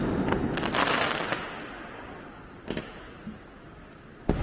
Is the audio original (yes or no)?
yes